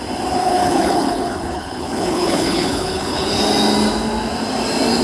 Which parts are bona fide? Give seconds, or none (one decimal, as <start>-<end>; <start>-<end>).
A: 0.0-0.4; 3.4-5.0